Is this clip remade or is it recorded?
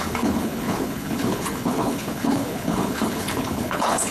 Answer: remade